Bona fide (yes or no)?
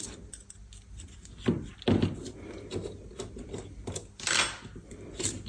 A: yes